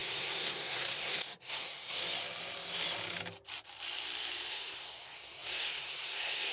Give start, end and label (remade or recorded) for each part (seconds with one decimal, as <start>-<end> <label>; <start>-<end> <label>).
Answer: 0.0-2.0 remade; 2.0-4.5 recorded; 4.5-6.5 remade